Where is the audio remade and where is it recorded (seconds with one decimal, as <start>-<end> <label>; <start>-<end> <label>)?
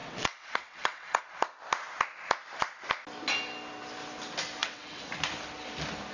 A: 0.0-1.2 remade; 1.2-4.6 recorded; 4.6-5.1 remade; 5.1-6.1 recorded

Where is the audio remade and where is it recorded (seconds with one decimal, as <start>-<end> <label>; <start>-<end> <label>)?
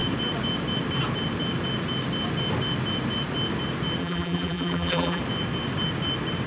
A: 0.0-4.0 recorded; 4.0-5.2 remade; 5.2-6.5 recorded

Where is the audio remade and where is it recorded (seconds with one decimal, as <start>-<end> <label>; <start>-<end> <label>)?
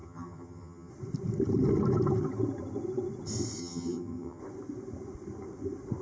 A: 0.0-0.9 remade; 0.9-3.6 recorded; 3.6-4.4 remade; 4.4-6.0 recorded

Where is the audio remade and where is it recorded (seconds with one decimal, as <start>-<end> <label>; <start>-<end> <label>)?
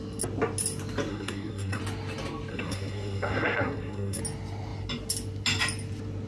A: 0.0-1.1 recorded; 1.1-1.8 remade; 1.8-2.5 recorded; 2.5-4.2 remade; 4.2-6.3 recorded